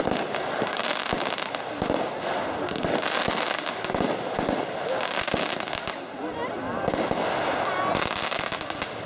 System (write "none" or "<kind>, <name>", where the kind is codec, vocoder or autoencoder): none